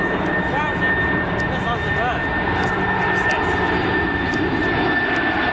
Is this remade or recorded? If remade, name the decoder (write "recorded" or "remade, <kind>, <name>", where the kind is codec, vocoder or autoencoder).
recorded